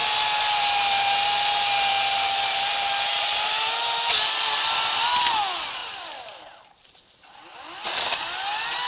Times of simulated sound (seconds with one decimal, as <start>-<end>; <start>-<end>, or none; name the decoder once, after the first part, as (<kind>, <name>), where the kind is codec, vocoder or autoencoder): 5.8-7.0 (vocoder, BigVGAN v2)